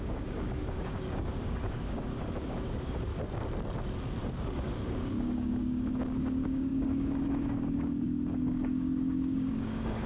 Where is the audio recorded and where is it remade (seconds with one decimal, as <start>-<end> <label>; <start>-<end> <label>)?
0.0-3.1 remade; 3.1-4.3 recorded; 4.3-10.1 remade